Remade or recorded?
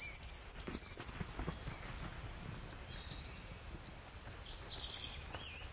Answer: recorded